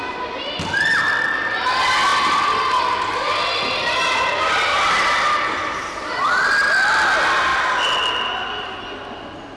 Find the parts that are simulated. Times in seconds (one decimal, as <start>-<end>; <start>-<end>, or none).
none